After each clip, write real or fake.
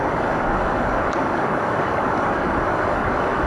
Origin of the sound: fake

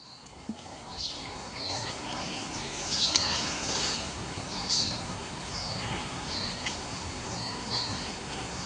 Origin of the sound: fake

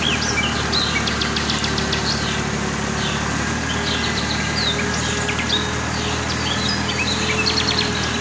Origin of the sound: real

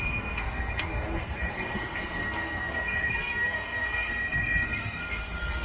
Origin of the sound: fake